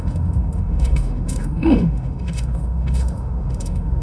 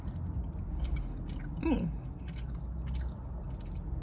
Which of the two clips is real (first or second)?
second